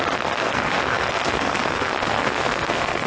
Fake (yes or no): yes